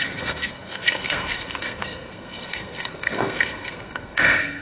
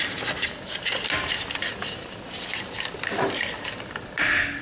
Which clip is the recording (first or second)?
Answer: second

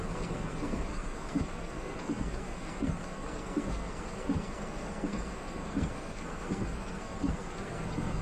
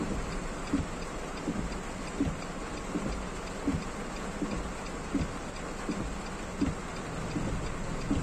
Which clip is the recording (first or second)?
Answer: second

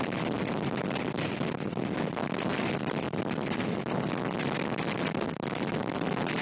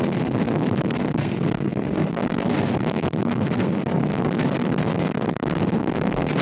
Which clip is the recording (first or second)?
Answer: first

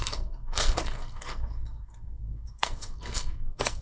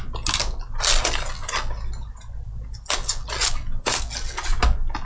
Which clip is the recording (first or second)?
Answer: second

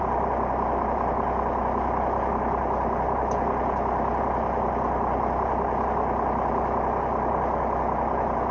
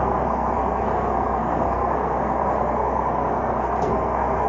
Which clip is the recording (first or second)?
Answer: first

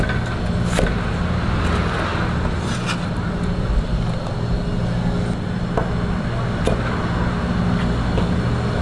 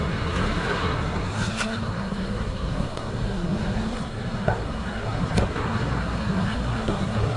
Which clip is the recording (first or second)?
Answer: first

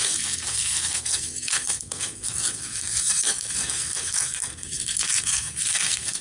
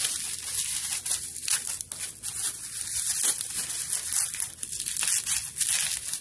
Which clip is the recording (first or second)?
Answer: second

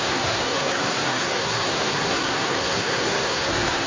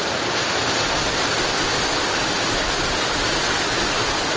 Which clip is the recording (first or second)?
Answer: second